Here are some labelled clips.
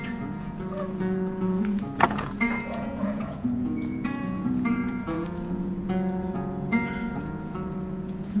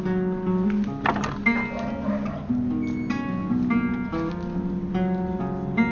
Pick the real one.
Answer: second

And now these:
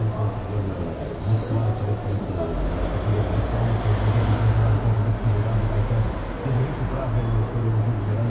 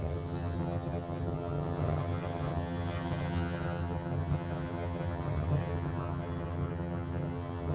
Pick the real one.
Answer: first